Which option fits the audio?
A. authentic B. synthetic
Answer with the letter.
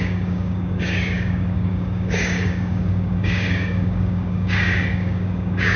B